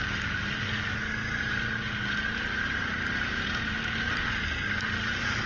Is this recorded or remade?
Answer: recorded